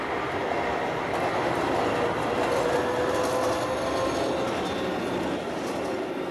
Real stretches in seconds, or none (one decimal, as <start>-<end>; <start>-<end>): 0.0-6.3